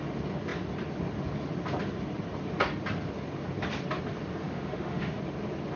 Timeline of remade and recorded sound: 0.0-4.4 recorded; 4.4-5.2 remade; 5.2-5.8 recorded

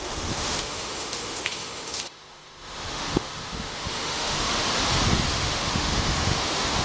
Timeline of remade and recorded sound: 0.0-4.5 remade; 4.5-5.3 recorded; 5.3-6.8 remade

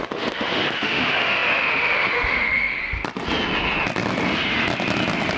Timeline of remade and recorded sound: 0.0-2.8 remade; 2.8-5.4 recorded

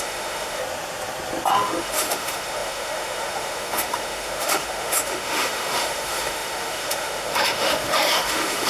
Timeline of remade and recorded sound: 0.0-0.6 remade; 0.6-1.5 recorded; 1.5-8.7 remade

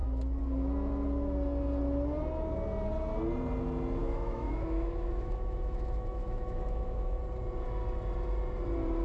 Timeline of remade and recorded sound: 0.0-4.0 recorded; 4.0-7.2 remade; 7.2-9.0 recorded